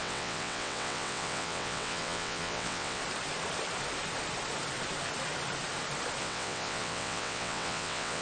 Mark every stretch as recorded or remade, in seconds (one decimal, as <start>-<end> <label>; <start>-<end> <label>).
0.0-3.0 remade; 3.0-6.2 recorded; 6.2-8.2 remade